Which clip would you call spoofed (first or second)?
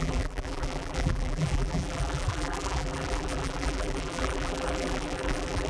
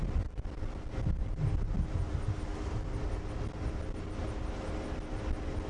first